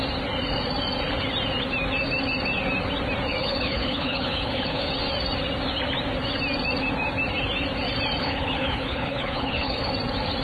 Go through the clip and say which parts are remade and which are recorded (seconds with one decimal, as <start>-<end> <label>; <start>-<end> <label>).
0.0-3.4 recorded; 3.4-4.9 remade; 4.9-8.2 recorded; 8.2-9.9 remade; 9.9-10.4 recorded